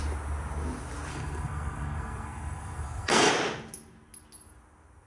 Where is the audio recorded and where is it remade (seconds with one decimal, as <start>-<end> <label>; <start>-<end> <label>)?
0.0-1.1 recorded; 1.1-3.3 remade; 3.3-5.1 recorded